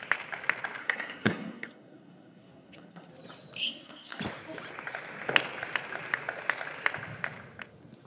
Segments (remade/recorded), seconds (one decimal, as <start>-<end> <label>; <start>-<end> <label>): 0.0-0.8 recorded; 0.8-3.1 remade; 3.1-3.6 recorded; 3.6-4.2 remade; 4.2-8.1 recorded